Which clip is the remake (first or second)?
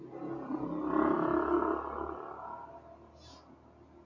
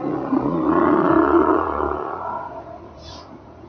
second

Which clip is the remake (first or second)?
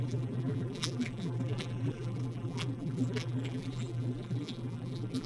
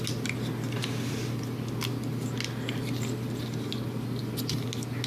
first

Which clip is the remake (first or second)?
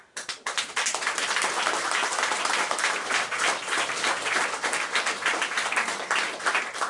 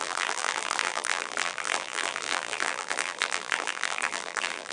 second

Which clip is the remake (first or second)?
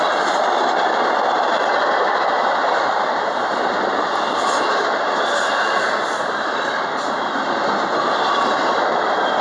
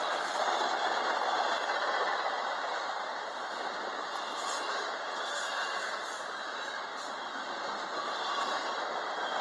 first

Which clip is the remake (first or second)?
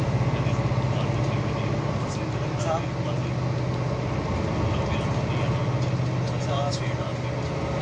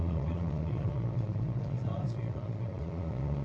second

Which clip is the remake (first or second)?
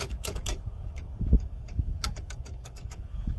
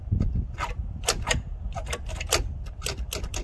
first